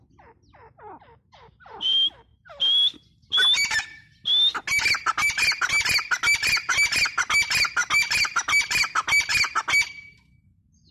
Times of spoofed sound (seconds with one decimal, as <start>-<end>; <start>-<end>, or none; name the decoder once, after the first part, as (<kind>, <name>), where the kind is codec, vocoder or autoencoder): 7.8-8.8 (vocoder, BigVGAN v2)